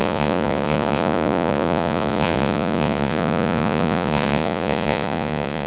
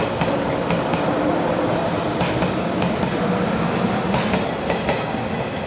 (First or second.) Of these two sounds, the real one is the second